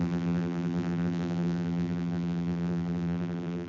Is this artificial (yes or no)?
yes